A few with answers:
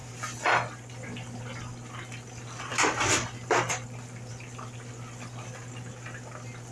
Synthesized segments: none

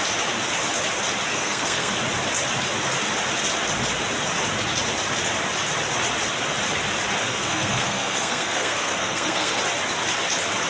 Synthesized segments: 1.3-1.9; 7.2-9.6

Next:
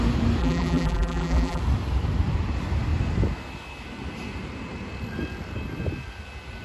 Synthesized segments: 0.4-1.6

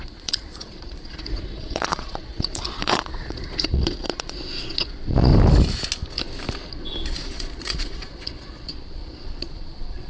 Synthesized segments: 0.0-5.3; 7.1-10.1

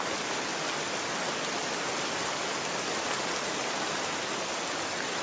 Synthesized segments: none

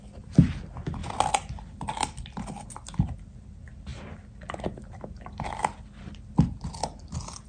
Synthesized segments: none

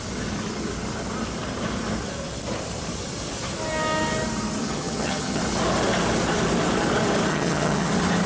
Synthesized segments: 4.6-5.4; 7.3-7.9

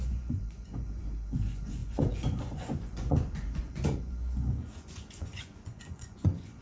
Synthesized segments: 0.0-6.6